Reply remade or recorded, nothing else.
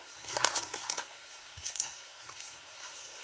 remade